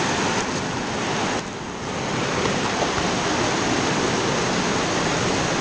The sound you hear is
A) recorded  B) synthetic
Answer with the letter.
A